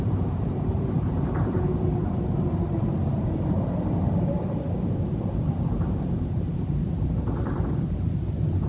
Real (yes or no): no